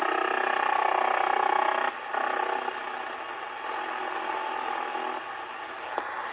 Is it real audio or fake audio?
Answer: real